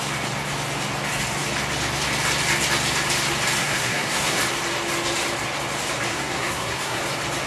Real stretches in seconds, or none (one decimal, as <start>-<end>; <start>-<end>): 0.0-3.6; 4.4-6.1; 7.0-7.5